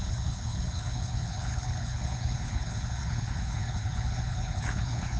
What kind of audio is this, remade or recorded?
remade